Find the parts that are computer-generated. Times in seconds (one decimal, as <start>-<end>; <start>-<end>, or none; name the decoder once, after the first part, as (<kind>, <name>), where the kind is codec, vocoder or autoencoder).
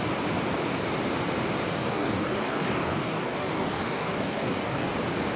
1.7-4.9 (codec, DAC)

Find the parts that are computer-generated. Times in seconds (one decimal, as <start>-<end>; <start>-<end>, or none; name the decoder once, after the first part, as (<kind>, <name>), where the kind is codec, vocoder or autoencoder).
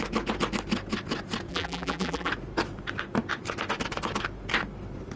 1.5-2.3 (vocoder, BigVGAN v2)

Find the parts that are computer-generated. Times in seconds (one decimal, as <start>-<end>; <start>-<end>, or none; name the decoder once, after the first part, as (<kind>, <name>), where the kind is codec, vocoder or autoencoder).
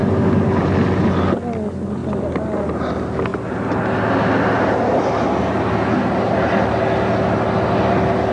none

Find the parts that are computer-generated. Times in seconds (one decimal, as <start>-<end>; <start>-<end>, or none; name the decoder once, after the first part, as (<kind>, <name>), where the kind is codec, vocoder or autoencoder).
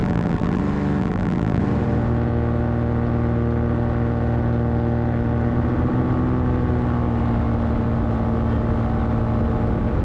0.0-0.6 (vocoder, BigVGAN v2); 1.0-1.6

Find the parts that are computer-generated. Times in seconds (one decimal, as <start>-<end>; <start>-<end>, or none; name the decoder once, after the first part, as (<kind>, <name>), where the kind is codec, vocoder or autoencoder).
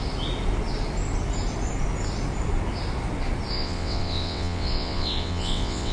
3.5-5.9 (vocoder, WaveNeXt)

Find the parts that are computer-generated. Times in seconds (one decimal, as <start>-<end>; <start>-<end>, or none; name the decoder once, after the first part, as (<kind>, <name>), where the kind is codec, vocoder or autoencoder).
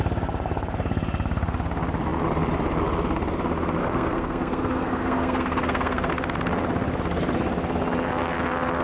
3.8-6.1 (codec, SNAC)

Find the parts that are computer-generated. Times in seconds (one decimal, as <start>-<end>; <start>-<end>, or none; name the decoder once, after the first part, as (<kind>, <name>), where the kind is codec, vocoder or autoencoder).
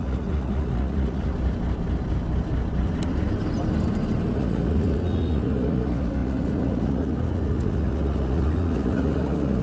0.0-1.3 (vocoder, Vocos); 4.3-9.6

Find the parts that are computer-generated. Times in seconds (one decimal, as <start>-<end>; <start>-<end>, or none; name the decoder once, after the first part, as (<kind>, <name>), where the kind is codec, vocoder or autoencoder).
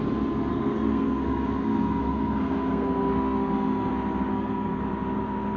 0.5-3.9 (codec, SNAC); 4.3-4.8